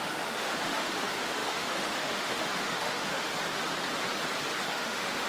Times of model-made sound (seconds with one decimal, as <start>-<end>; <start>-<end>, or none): 0.0-3.3; 4.6-5.3